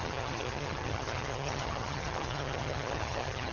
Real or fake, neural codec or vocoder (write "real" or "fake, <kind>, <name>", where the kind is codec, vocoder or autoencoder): fake, vocoder, HiFi-GAN